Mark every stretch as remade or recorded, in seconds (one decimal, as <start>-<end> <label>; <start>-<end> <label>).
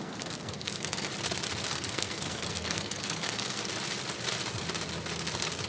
0.0-1.1 remade; 1.1-1.7 recorded; 1.7-3.6 remade; 3.6-5.7 recorded